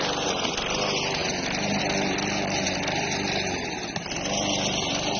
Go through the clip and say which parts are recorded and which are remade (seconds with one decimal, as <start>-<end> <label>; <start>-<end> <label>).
0.0-5.2 recorded